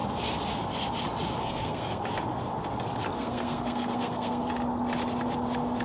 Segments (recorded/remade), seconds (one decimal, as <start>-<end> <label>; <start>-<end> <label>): 0.0-1.4 recorded; 1.4-2.0 remade; 2.0-3.1 recorded; 3.1-4.5 remade; 4.5-5.8 recorded